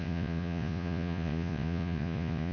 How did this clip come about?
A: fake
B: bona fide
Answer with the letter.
A